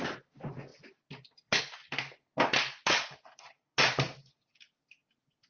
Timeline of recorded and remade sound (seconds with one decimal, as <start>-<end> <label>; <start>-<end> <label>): 0.0-5.5 recorded